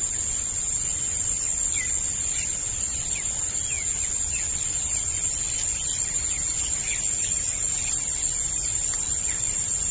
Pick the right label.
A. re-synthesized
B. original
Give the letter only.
B